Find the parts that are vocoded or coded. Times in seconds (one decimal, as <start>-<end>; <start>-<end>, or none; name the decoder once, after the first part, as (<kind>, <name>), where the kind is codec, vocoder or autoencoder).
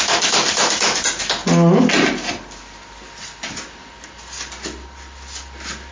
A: none